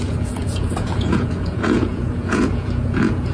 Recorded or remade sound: remade